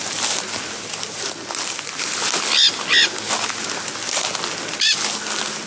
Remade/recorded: recorded